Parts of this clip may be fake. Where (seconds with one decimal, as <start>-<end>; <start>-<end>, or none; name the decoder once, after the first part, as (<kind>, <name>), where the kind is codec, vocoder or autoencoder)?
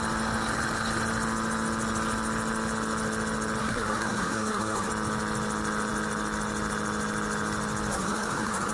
3.6-4.9 (codec, SNAC); 7.9-8.7